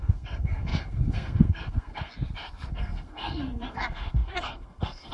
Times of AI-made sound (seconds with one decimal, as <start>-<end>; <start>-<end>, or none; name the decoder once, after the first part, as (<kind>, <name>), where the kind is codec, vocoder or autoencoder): 0.0-2.1 (codec, SNAC); 2.7-5.1